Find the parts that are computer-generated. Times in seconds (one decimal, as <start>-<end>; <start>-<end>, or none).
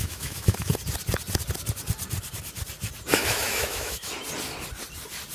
0.0-0.7; 3.1-4.1